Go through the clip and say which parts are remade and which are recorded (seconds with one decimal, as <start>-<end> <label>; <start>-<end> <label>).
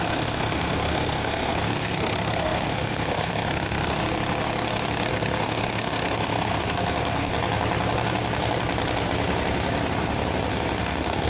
0.0-4.0 remade; 4.0-5.1 recorded; 5.1-7.3 remade; 7.3-10.8 recorded; 10.8-11.3 remade